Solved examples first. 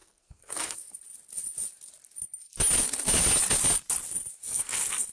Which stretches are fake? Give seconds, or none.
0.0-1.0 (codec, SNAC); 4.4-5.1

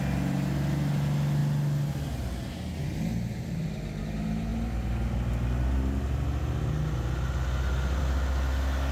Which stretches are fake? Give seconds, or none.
none

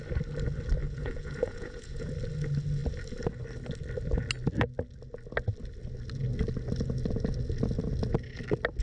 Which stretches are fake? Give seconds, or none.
0.8-2.1 (vocoder, Vocos)

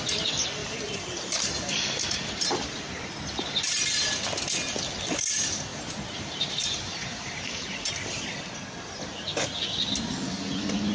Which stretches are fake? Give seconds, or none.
0.6-3.1 (vocoder, BigVGAN v2); 5.7-7.9

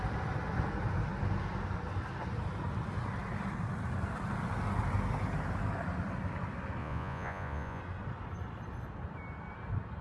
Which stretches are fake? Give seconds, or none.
6.8-7.8 (vocoder, Vocos)